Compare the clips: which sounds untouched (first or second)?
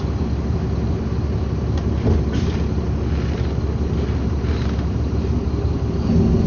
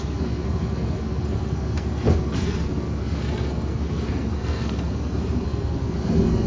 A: first